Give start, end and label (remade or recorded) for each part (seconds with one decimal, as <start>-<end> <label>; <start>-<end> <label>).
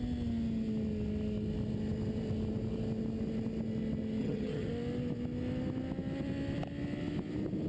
0.0-4.2 recorded; 4.2-4.7 remade; 4.7-7.7 recorded